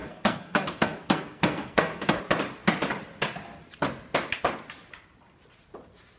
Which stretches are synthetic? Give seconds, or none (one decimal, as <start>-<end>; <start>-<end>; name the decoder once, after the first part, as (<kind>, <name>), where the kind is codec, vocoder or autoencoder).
0.0-2.2 (codec, SNAC)